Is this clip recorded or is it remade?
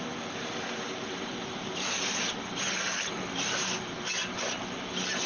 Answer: remade